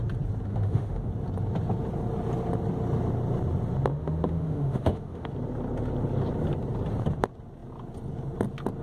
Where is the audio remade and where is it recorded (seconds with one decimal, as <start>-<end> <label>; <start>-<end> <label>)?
0.0-0.5 recorded; 0.5-1.1 remade; 1.1-3.9 recorded; 3.9-5.3 remade; 5.3-8.8 recorded